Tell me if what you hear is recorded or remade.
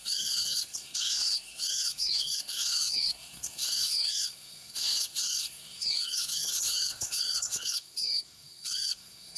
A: remade